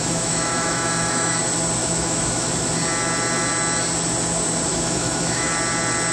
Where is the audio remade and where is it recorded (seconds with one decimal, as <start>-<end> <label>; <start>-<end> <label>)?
0.0-1.4 remade; 1.4-1.8 recorded; 1.8-2.5 remade; 2.5-4.7 recorded; 4.7-5.5 remade; 5.5-6.1 recorded